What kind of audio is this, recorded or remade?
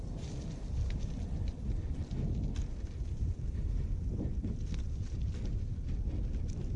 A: recorded